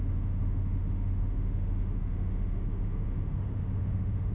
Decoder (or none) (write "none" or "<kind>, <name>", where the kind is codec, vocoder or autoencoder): autoencoder, DAC-VAE